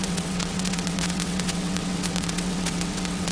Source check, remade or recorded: remade